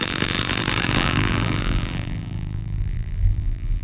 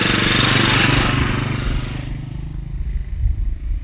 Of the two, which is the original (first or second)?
second